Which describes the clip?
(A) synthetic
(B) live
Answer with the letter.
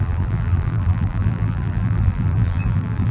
A